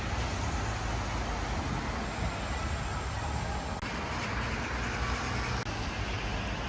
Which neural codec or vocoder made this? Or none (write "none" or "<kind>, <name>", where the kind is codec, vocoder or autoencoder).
none